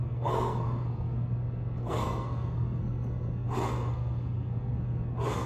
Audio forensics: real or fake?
fake